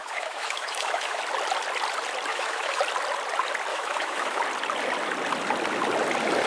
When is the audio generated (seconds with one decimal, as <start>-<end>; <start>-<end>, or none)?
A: 0.0-1.2; 2.3-2.8; 3.7-4.4